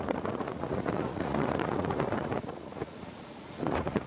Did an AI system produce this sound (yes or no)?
yes